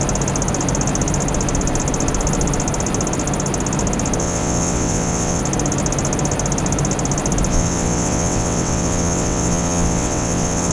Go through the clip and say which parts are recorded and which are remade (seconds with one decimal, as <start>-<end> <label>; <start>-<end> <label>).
0.0-4.2 recorded; 4.2-5.4 remade; 5.4-7.5 recorded; 7.5-10.7 remade